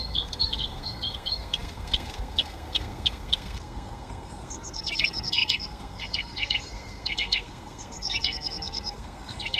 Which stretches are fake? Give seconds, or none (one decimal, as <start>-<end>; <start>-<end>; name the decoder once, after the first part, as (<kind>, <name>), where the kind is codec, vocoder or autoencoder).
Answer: 0.0-9.6 (codec, SNAC)